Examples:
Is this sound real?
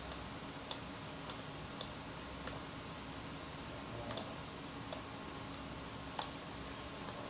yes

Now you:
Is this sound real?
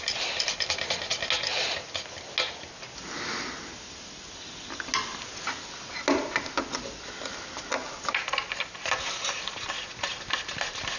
yes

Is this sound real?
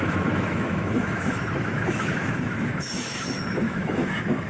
no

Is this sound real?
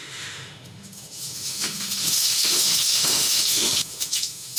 no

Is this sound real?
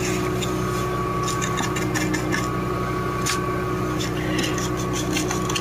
yes